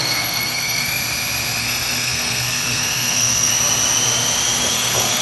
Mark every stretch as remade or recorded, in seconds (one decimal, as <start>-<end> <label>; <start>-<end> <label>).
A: 0.0-1.0 remade; 1.0-1.6 recorded; 1.6-3.5 remade; 3.5-4.7 recorded; 4.7-5.2 remade